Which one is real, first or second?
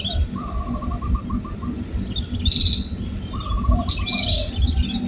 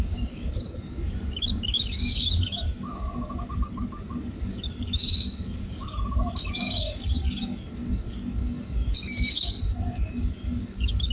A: first